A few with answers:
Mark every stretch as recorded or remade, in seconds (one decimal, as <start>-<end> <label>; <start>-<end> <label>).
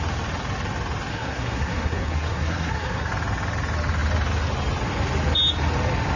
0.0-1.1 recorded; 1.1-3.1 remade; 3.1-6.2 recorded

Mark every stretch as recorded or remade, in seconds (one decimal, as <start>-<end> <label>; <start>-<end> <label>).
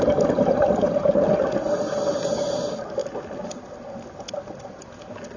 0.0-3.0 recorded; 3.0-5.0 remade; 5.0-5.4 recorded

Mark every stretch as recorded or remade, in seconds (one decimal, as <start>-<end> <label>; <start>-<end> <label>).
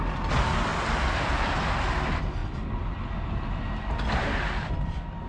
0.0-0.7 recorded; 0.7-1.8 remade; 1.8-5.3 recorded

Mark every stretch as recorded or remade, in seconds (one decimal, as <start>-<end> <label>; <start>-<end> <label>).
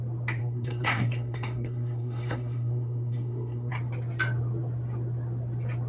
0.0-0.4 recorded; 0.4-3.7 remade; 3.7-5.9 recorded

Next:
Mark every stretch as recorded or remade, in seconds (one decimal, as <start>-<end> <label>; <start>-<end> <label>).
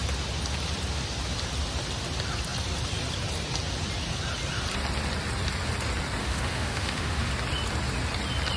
0.0-6.2 recorded; 6.2-7.3 remade; 7.3-8.6 recorded